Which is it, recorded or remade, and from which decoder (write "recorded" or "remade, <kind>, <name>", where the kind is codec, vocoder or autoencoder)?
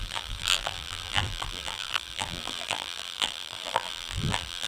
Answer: remade, vocoder, BigVGAN v2